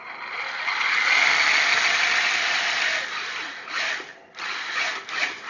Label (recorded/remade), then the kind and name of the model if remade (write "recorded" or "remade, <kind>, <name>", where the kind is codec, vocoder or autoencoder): recorded